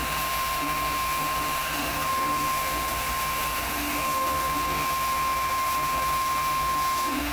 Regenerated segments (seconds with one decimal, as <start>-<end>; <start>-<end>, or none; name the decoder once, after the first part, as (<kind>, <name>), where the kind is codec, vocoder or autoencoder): 0.0-7.3 (autoencoder, DAC-VAE)